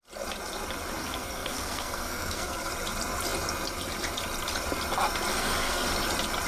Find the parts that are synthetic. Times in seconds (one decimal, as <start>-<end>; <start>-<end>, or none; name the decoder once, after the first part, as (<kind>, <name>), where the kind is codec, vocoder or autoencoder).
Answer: 1.0-2.7 (codec, SNAC); 5.3-5.9